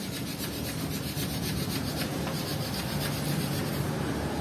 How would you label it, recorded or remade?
remade